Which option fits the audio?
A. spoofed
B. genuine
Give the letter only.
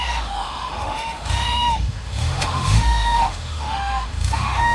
A